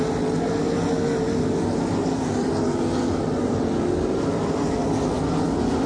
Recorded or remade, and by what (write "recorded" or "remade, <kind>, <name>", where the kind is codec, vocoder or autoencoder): recorded